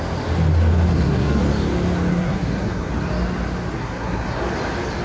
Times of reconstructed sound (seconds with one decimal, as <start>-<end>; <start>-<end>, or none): 0.9-1.4; 2.1-2.9; 3.8-4.4